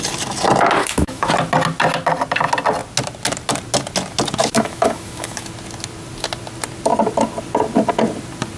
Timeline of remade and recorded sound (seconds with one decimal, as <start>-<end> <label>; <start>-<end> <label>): 0.0-0.8 recorded; 0.8-1.3 remade; 1.3-4.4 recorded; 4.4-5.5 remade; 5.5-8.6 recorded